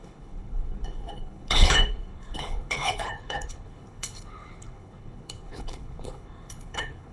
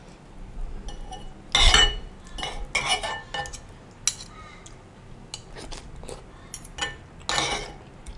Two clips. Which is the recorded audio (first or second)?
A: second